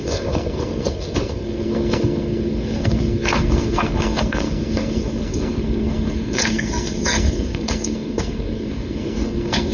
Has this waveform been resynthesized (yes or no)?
yes